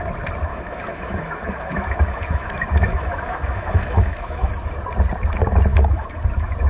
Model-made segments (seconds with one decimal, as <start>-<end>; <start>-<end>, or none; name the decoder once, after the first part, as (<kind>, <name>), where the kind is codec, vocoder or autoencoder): 0.5-4.5 (autoencoder, DAC-VAE); 5.7-6.2